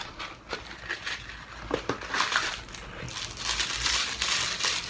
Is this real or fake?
real